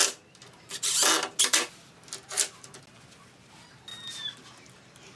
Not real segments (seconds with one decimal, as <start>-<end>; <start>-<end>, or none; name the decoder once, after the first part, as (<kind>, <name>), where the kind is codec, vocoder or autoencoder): none